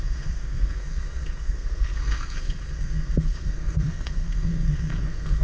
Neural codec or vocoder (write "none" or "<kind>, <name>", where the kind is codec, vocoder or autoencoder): codec, SNAC